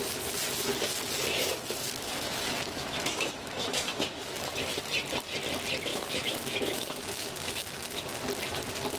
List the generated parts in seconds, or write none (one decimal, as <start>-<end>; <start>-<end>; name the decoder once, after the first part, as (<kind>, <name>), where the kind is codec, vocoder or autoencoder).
1.3-4.8 (autoencoder, DAC-VAE); 5.9-8.0